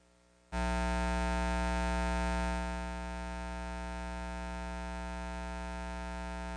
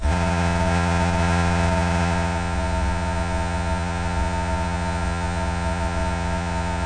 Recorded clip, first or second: first